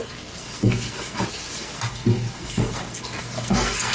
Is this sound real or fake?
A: fake